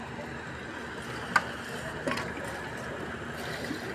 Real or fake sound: real